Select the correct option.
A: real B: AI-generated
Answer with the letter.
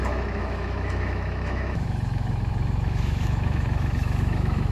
B